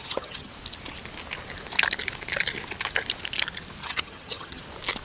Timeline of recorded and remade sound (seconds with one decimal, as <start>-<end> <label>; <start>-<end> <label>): 0.0-0.5 remade; 0.5-3.8 recorded; 3.8-4.6 remade; 4.6-5.0 recorded